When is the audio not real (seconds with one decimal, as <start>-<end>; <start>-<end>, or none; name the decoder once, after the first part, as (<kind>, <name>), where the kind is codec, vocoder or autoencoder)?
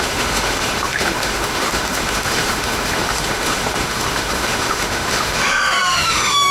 0.0-6.5 (autoencoder, DAC-VAE)